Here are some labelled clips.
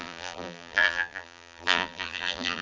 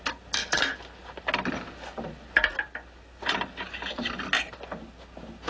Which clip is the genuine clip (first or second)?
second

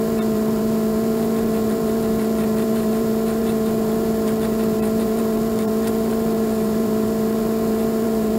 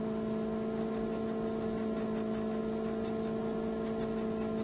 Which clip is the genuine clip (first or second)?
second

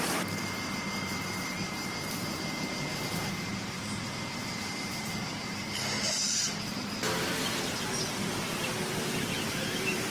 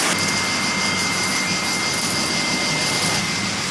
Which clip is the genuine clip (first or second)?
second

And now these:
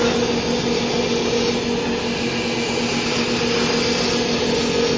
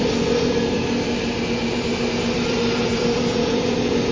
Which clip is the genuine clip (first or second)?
first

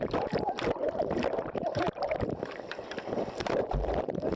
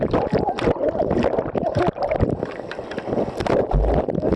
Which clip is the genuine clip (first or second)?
second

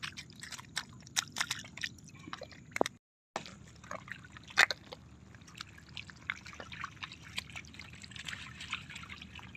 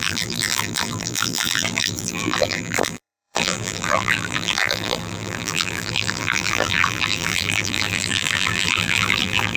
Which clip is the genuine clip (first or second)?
first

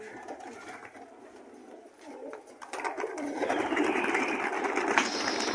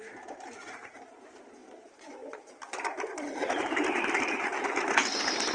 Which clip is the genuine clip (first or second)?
first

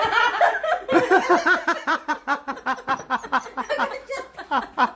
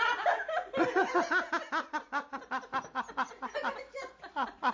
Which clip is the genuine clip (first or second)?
second